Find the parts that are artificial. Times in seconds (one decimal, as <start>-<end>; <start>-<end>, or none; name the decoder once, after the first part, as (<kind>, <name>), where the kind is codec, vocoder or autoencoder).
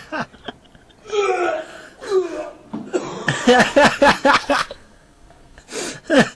4.4-5.6 (codec, SNAC)